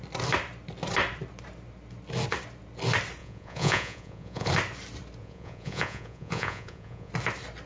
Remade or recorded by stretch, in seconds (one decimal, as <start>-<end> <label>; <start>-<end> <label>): 0.0-3.2 recorded; 3.2-4.5 remade; 4.5-5.2 recorded; 5.2-7.1 remade; 7.1-7.7 recorded